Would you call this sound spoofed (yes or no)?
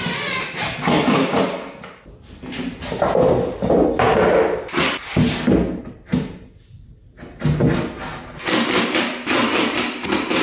no